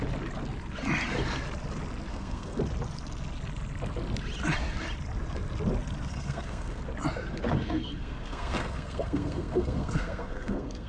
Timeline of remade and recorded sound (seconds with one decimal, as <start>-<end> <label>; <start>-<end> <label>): 0.0-2.1 recorded; 2.1-2.6 remade; 2.6-6.1 recorded; 6.1-6.8 remade; 6.8-7.6 recorded; 7.6-10.9 remade

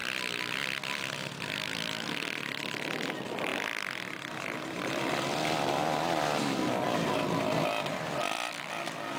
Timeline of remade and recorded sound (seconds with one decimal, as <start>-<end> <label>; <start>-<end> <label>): 0.0-9.2 recorded

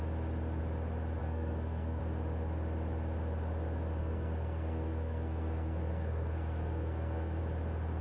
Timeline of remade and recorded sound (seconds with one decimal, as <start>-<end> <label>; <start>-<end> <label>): 0.0-1.2 recorded; 1.2-2.0 remade; 2.0-4.0 recorded; 4.0-7.4 remade; 7.4-8.0 recorded

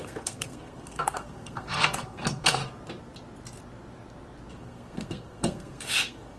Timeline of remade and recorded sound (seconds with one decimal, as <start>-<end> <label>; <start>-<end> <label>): 0.0-2.6 remade; 2.6-4.5 recorded; 4.5-6.4 remade